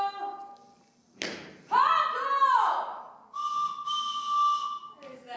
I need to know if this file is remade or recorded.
recorded